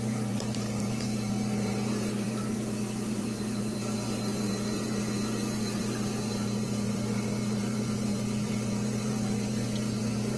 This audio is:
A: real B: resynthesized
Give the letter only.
B